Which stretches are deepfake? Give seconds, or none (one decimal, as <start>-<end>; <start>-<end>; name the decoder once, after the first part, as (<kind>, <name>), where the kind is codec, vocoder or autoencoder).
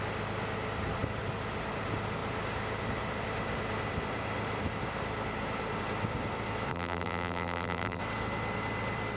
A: 6.7-8.0 (vocoder, BigVGAN v2)